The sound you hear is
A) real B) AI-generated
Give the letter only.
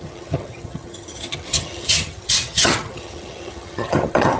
B